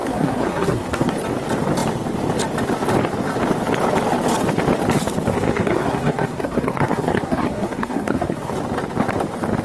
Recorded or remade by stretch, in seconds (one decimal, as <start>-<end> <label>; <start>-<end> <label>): 0.0-1.1 remade; 1.1-5.3 recorded; 5.3-8.5 remade; 8.5-9.6 recorded